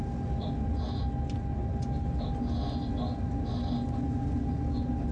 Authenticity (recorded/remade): recorded